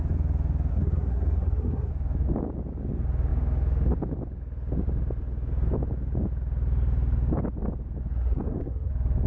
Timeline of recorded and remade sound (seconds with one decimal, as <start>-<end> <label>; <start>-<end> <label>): 0.0-0.7 recorded; 0.7-1.9 remade; 1.9-8.1 recorded; 8.1-8.9 remade; 8.9-9.3 recorded